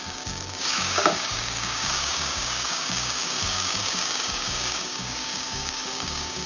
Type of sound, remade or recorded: remade